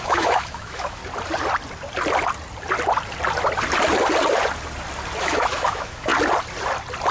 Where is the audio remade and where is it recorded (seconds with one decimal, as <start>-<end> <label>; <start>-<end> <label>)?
0.0-1.0 remade; 1.0-5.2 recorded; 5.2-6.1 remade; 6.1-7.1 recorded